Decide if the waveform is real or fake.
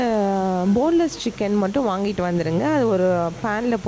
real